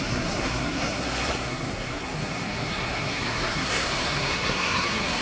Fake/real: fake